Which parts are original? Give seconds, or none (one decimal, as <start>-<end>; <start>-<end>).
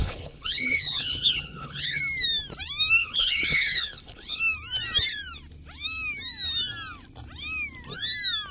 2.0-3.0; 4.4-8.5